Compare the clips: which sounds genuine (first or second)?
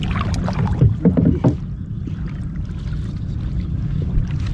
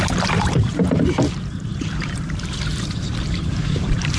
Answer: first